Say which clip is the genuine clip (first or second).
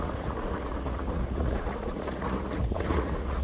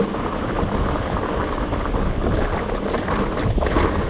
second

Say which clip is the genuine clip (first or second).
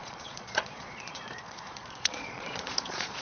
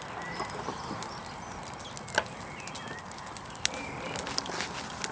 second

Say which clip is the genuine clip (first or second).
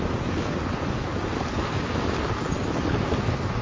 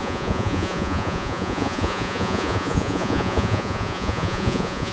first